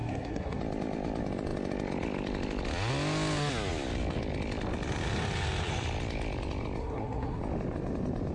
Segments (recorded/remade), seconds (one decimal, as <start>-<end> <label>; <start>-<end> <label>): 0.0-0.6 remade; 0.6-6.8 recorded; 6.8-7.4 remade; 7.4-8.3 recorded